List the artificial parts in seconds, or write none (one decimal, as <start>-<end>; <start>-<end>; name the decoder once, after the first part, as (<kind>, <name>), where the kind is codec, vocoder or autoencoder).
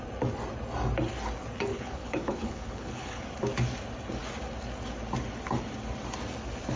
1.7-3.2 (codec, HILCodec)